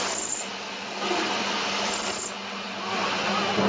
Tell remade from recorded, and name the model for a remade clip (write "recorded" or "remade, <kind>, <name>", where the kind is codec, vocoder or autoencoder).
recorded